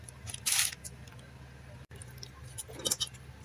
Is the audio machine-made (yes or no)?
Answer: no